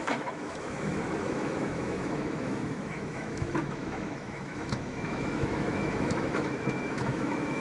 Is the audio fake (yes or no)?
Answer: yes